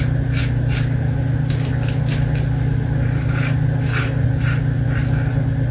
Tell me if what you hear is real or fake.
real